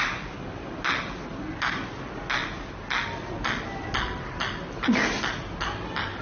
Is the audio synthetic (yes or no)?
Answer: no